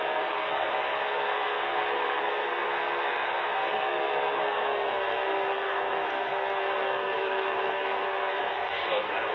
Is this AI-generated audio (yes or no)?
yes